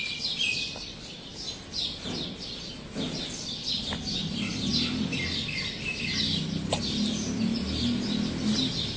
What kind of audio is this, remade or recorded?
recorded